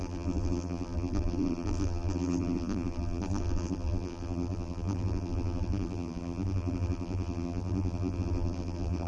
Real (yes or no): no